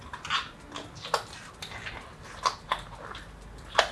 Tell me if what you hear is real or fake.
real